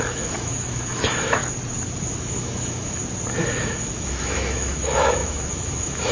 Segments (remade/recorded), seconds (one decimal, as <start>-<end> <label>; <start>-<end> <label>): 0.0-1.4 remade; 1.4-2.2 recorded; 2.2-3.0 remade; 3.0-3.6 recorded; 3.6-6.1 remade

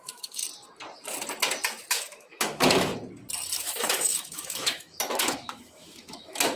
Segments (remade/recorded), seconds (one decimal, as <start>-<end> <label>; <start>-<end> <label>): 0.0-0.4 remade; 0.4-1.9 recorded; 1.9-2.9 remade; 2.9-3.6 recorded; 3.6-6.5 remade

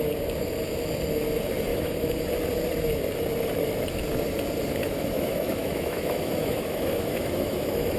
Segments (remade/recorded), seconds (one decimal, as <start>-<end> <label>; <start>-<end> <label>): 0.0-1.7 recorded; 1.7-2.3 remade; 2.3-4.7 recorded; 4.7-8.0 remade

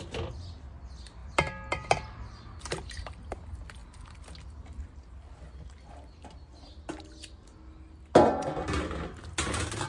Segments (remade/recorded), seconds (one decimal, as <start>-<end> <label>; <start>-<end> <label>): 0.0-9.9 recorded